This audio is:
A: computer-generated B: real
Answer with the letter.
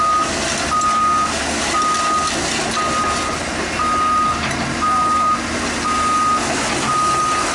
B